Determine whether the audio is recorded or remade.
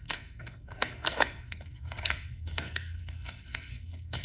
remade